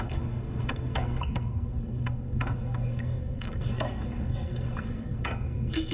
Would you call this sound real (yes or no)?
no